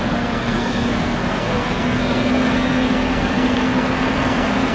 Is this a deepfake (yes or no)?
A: yes